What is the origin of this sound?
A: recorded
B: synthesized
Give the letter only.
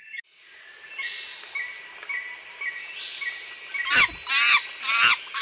A